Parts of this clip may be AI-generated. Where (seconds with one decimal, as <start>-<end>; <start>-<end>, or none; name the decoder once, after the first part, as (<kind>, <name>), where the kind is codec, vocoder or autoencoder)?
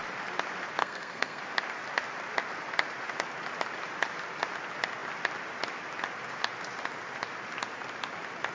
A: 0.8-1.4 (codec, SNAC)